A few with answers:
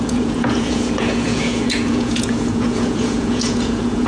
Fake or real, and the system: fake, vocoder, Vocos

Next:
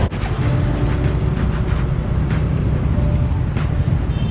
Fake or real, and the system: real